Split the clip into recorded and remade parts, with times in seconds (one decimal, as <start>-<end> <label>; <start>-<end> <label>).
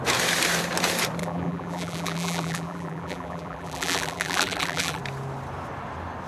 0.0-1.2 recorded; 1.2-5.0 remade; 5.0-6.3 recorded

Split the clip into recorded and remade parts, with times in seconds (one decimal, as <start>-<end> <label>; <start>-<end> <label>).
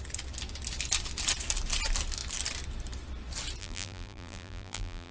0.0-3.6 recorded; 3.6-5.1 remade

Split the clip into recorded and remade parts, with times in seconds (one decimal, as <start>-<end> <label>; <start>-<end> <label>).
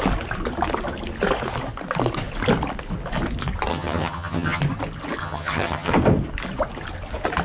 0.0-3.7 recorded; 3.7-4.6 remade; 4.6-5.2 recorded; 5.2-5.9 remade; 5.9-7.4 recorded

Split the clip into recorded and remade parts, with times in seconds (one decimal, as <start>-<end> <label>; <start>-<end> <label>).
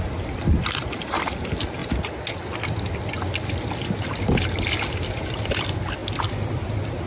0.0-7.1 recorded